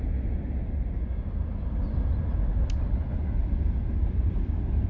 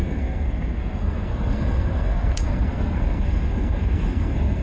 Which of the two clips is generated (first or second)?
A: second